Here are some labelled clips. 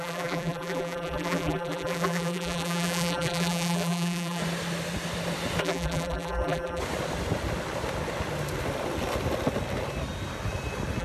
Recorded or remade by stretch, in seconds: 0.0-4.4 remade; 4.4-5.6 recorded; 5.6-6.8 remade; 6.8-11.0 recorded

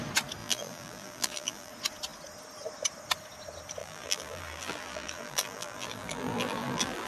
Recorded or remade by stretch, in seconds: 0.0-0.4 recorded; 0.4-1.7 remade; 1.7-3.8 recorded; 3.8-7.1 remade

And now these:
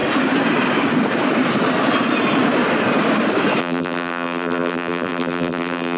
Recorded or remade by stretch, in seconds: 0.0-3.6 recorded; 3.6-6.0 remade

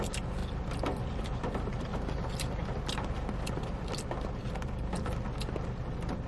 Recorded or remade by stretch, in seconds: 0.0-6.3 recorded

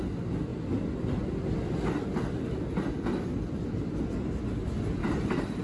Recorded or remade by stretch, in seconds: 0.0-0.5 recorded; 0.5-3.9 remade; 3.9-5.0 recorded; 5.0-5.6 remade

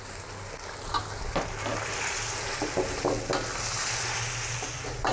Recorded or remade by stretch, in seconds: 0.0-5.1 recorded

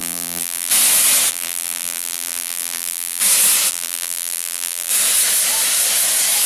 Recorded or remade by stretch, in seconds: 0.0-0.7 remade; 0.7-1.3 recorded; 1.3-3.2 remade; 3.2-3.7 recorded; 3.7-4.9 remade; 4.9-6.5 recorded

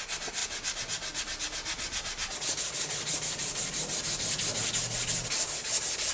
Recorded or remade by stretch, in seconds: 0.0-6.1 recorded